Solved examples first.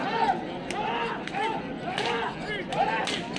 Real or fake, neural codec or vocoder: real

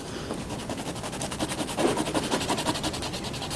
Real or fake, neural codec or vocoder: real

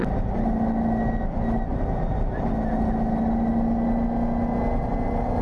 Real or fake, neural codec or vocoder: real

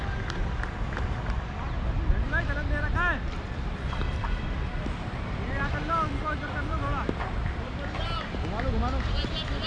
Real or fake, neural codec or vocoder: real